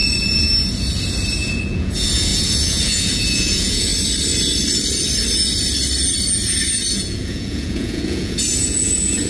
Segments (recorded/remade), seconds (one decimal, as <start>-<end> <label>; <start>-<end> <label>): 0.0-1.4 recorded; 1.4-3.9 remade; 3.9-6.9 recorded; 6.9-9.3 remade